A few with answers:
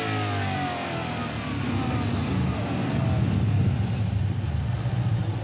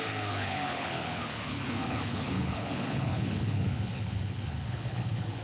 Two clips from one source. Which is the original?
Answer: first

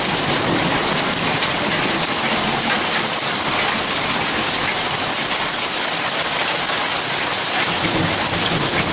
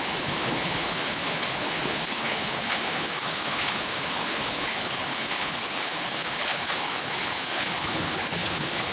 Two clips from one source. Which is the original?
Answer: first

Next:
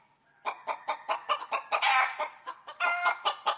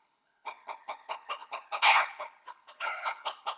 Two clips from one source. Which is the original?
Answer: first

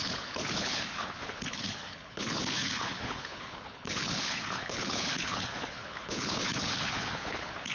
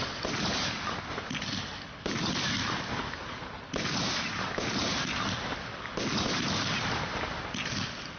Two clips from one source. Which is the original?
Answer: second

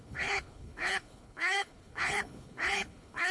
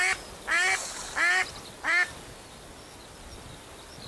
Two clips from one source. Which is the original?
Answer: second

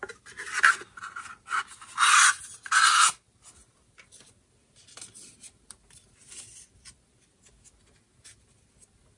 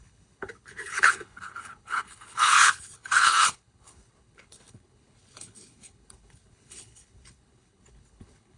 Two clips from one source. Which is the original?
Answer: first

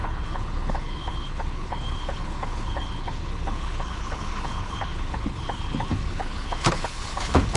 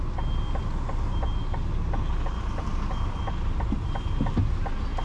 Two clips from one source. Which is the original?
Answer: second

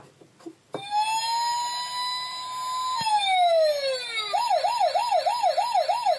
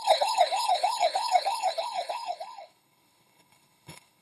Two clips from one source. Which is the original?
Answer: first